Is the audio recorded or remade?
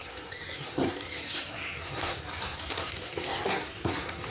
remade